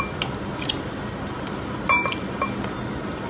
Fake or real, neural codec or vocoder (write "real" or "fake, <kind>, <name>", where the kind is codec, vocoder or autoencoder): real